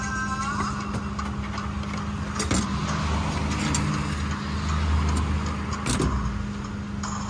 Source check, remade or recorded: recorded